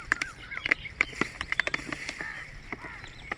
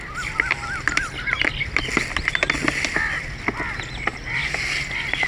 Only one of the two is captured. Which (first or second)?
second